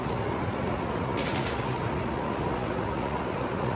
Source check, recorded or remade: remade